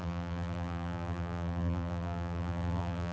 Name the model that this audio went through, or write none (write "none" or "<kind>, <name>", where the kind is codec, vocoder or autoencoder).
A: vocoder, BigVGAN v2